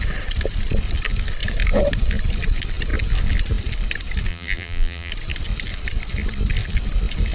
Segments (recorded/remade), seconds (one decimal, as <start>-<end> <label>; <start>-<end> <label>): 0.0-4.3 recorded; 4.3-5.1 remade; 5.1-7.3 recorded